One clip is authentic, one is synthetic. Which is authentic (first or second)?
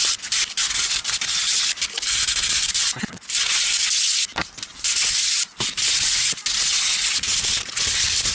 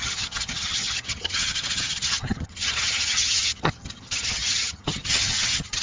first